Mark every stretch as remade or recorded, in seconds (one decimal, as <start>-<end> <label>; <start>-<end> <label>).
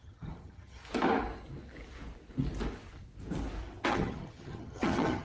0.0-0.8 remade; 0.8-3.9 recorded; 3.9-5.2 remade